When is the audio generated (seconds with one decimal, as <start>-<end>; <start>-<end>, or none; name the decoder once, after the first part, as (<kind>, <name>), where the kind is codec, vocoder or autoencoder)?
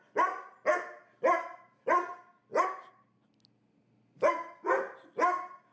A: none